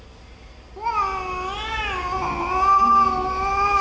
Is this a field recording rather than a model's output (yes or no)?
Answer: yes